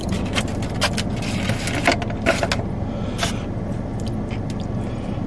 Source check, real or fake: real